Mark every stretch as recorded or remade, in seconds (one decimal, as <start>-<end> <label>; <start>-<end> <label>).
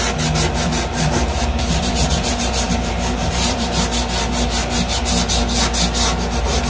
0.0-0.9 recorded; 0.9-3.8 remade; 3.8-6.7 recorded